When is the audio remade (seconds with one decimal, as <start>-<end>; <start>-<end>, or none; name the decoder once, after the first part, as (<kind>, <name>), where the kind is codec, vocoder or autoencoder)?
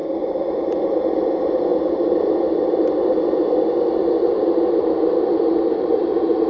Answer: none